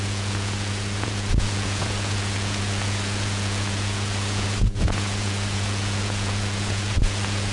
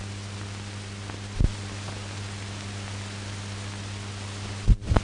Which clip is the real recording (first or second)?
second